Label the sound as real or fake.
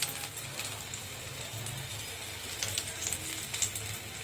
real